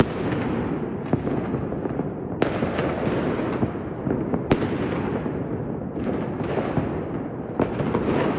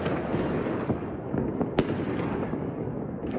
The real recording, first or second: first